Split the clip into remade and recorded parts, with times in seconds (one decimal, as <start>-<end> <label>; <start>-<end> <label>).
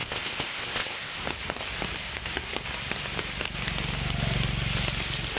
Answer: 0.0-1.2 remade; 1.2-5.4 recorded